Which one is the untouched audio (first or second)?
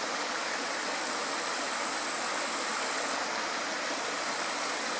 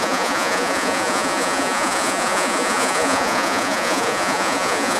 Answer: first